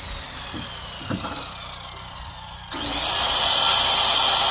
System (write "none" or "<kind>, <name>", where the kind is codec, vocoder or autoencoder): none